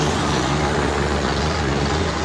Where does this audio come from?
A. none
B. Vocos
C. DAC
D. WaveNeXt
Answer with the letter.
B